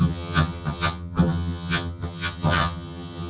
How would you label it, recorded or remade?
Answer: remade